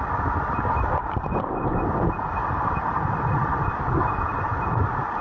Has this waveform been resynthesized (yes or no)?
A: no